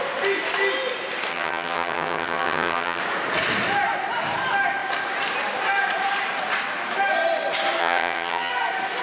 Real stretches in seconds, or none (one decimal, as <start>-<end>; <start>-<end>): 0.0-1.3; 3.0-7.8; 8.5-9.0